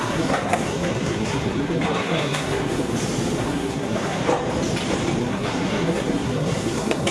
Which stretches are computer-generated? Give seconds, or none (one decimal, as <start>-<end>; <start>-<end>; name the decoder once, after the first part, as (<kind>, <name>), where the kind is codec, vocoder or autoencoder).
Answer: 0.0-2.9 (codec, SNAC); 3.4-4.2; 5.2-7.1